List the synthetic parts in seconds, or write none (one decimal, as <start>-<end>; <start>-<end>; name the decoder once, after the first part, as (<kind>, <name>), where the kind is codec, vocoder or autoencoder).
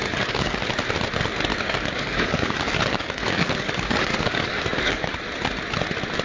0.0-0.7 (codec, DAC); 1.5-5.2